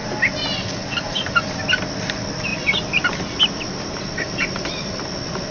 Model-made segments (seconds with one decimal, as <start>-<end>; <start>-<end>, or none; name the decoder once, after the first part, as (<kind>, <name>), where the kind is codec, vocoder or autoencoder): none